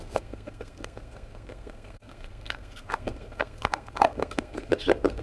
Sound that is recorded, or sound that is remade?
remade